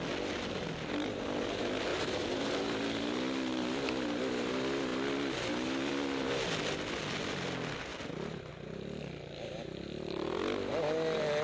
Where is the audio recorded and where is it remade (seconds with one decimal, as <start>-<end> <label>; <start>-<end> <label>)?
0.0-1.9 recorded; 1.9-2.8 remade; 2.8-3.5 recorded; 3.5-4.5 remade; 4.5-7.9 recorded; 7.9-8.5 remade; 8.5-11.4 recorded